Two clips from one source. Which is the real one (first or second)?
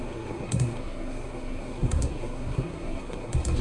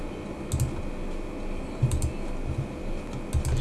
second